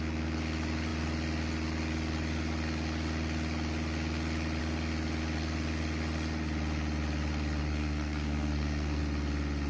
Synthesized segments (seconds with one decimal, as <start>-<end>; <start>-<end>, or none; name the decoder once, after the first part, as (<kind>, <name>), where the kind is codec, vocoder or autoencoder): 7.6-9.0 (codec, SNAC)